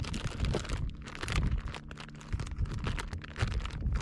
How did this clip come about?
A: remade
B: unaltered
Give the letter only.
B